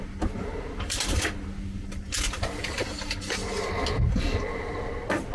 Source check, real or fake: real